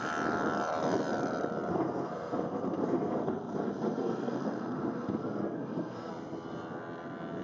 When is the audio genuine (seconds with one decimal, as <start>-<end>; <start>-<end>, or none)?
0.0-1.7; 6.1-7.4